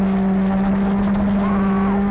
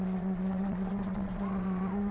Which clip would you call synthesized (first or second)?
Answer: second